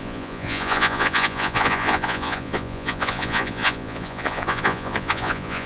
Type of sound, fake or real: fake